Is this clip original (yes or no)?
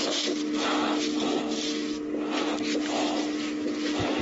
yes